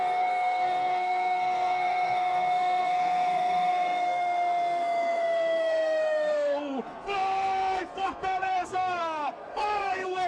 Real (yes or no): no